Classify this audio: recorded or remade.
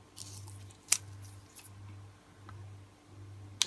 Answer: recorded